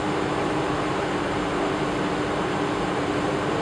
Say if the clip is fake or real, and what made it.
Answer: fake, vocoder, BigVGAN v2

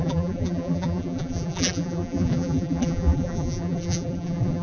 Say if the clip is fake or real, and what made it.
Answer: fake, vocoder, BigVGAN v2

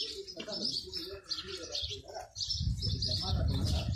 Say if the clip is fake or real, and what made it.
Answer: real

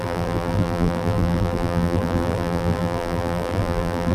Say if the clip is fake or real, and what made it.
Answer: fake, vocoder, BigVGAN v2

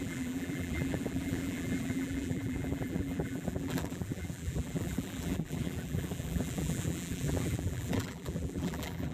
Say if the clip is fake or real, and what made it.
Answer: fake, vocoder, BigVGAN v2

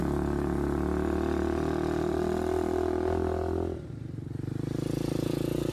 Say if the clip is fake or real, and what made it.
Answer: real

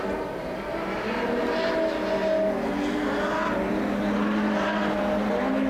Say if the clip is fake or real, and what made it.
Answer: real